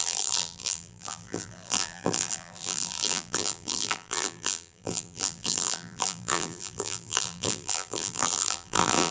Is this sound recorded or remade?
remade